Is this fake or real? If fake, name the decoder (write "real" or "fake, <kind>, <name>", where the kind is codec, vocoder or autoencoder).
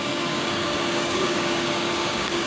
fake, codec, DAC